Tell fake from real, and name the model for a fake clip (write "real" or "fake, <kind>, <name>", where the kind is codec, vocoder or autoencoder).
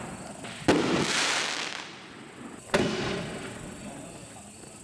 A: real